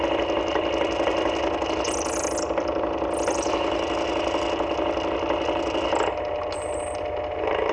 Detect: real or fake real